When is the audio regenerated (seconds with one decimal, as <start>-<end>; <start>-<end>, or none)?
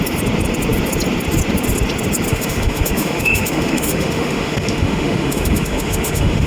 2.3-6.5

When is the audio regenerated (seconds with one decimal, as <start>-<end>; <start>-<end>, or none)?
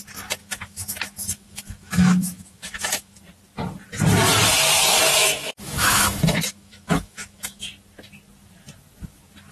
0.4-3.2; 5.1-7.7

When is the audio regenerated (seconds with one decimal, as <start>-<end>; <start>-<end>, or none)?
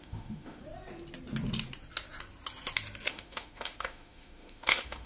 0.0-0.6; 3.1-5.1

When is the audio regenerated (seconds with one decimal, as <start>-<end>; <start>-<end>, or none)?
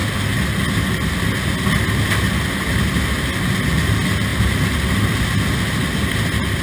none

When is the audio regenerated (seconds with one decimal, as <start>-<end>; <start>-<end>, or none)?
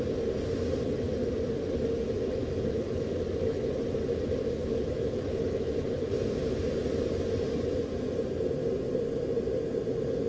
2.4-3.7; 4.6-5.7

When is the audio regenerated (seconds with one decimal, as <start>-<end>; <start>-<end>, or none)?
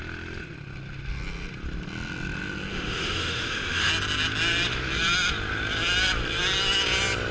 2.7-3.9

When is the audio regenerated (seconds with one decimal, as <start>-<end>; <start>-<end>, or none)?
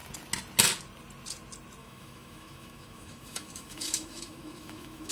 1.8-5.1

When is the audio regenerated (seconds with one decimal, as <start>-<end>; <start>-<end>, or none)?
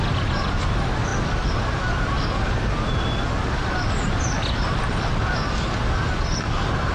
none